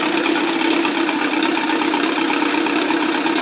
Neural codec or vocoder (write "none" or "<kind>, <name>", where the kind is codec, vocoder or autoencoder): none